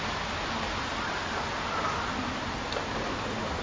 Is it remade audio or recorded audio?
recorded